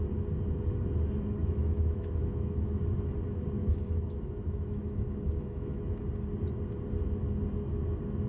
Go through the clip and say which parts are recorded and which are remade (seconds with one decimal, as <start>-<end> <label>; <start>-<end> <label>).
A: 0.0-1.4 recorded; 1.4-2.8 remade; 2.8-3.6 recorded; 3.6-6.0 remade; 6.0-8.3 recorded